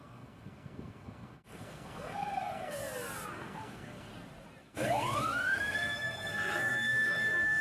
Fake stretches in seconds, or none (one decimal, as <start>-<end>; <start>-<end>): 0.0-2.8; 3.3-4.1; 4.6-7.6